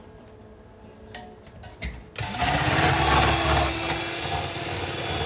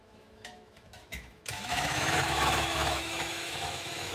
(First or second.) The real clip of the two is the first